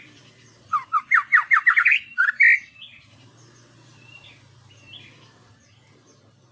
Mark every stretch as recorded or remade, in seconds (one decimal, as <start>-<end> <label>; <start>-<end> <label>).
0.0-6.5 recorded